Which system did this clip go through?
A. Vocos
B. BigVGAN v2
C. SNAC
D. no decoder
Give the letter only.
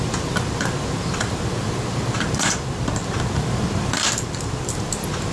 B